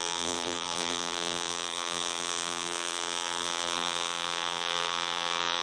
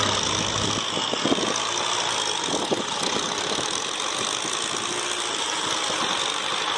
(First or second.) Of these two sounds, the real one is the second